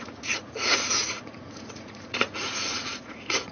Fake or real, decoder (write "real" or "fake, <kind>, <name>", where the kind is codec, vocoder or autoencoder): fake, vocoder, Vocos